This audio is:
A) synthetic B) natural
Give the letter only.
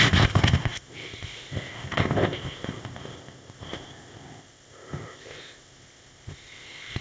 A